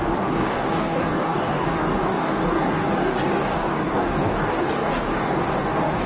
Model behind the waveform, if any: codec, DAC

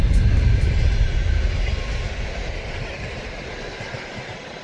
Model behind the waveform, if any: none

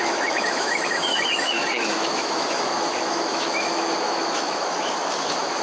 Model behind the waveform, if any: autoencoder, DAC-VAE